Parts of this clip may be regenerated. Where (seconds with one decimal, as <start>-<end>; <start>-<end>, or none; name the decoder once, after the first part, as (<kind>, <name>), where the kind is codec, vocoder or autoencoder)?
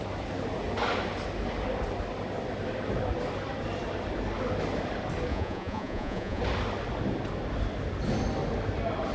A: 5.3-6.4 (vocoder, Vocos)